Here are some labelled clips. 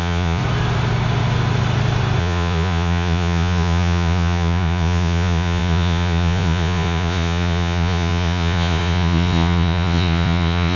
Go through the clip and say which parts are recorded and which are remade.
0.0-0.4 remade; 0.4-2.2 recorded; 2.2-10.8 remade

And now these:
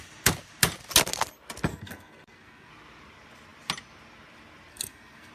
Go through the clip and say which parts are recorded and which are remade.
0.0-1.7 recorded; 1.7-2.7 remade; 2.7-4.7 recorded; 4.7-5.3 remade

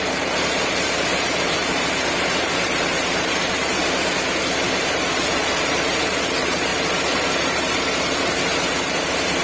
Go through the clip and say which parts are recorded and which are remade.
0.0-3.8 remade; 3.8-4.8 recorded; 4.8-9.4 remade

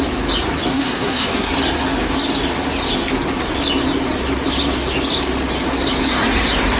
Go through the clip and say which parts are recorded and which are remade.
0.0-0.7 recorded; 0.7-1.5 remade; 1.5-6.8 recorded

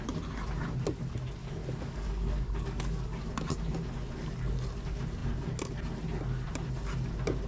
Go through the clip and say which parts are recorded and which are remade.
0.0-1.4 recorded; 1.4-3.3 remade; 3.3-7.5 recorded